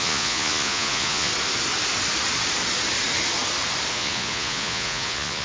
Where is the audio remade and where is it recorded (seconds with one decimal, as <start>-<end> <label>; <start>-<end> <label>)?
0.0-1.3 remade; 1.3-3.9 recorded; 3.9-5.4 remade